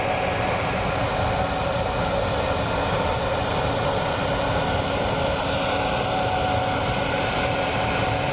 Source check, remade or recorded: recorded